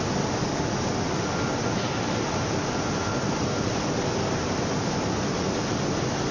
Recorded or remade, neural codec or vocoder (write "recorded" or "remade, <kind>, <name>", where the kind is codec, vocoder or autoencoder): recorded